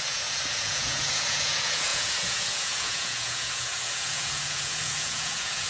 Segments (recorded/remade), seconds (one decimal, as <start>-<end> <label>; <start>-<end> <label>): 0.0-5.7 remade